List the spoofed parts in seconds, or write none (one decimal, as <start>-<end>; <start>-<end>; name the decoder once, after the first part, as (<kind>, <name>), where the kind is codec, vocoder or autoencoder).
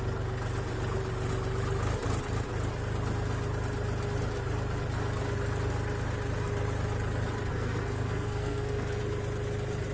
7.5-9.0 (codec, SNAC)